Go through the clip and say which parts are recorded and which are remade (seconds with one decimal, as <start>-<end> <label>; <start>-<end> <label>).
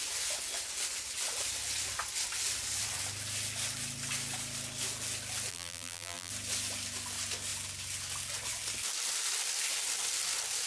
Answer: 0.0-5.5 recorded; 5.5-6.3 remade; 6.3-10.7 recorded